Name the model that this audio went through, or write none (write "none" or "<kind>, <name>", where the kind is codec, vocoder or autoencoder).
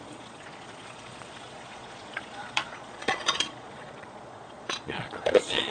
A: vocoder, Vocos